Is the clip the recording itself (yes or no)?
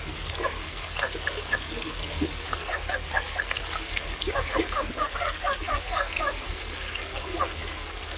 no